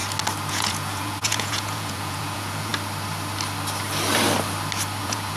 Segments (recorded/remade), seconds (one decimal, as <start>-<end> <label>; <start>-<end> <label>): 0.0-0.5 recorded; 0.5-2.7 remade; 2.7-5.0 recorded; 5.0-5.4 remade

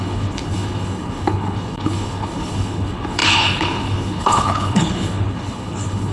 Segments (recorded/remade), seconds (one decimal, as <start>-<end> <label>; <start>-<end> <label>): 0.0-6.1 remade

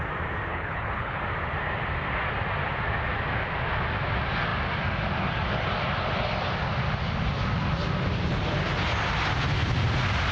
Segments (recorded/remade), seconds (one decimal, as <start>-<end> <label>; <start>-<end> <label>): 0.0-0.5 recorded; 0.5-1.2 remade; 1.2-10.3 recorded

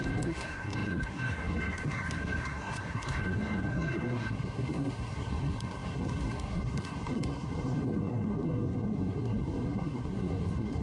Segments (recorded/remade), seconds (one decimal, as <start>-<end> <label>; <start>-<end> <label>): 0.0-10.8 remade

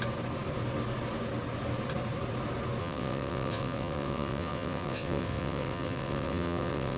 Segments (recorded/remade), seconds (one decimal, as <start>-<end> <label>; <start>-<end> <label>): 0.0-2.8 recorded; 2.8-7.0 remade